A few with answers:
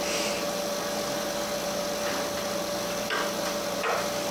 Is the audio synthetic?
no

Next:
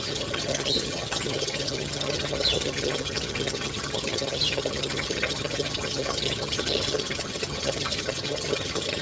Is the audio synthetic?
yes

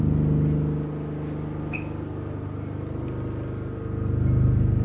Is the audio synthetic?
no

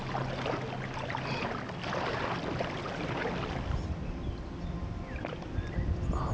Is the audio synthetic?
no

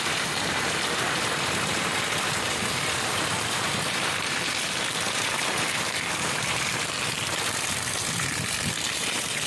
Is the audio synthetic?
yes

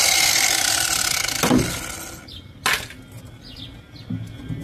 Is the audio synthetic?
no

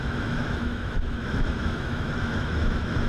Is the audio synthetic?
yes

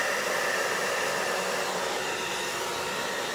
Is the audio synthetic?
no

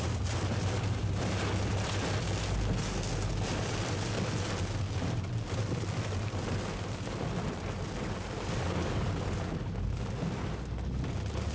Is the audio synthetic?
no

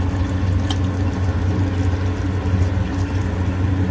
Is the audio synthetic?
no